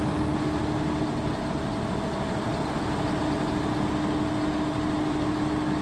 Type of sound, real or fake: real